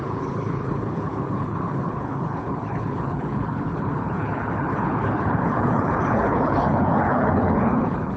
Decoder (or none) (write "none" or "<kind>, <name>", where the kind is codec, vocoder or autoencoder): codec, HILCodec